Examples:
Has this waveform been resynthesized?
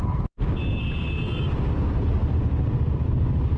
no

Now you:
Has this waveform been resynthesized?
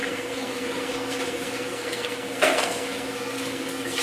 yes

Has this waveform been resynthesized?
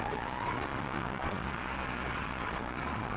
yes